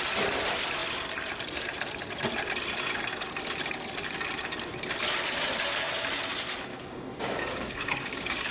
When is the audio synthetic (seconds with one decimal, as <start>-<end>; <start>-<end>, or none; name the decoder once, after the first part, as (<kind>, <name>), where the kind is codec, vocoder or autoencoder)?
6.7-8.5 (codec, DAC)